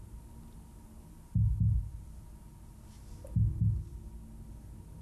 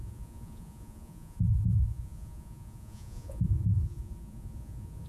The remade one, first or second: second